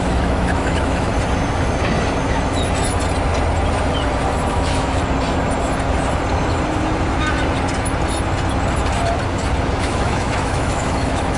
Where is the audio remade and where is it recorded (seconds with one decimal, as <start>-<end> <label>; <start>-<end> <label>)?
0.0-1.1 remade; 1.1-4.5 recorded; 4.5-5.0 remade; 5.0-9.8 recorded; 9.8-11.4 remade